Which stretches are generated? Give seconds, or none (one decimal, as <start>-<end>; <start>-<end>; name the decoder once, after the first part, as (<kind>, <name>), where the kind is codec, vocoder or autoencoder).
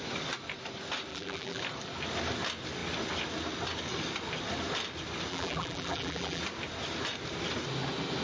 1.1-1.6 (vocoder, BigVGAN v2); 5.3-6.4